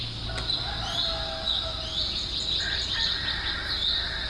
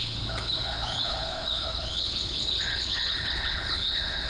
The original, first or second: first